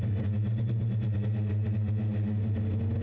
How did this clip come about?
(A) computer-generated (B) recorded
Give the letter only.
B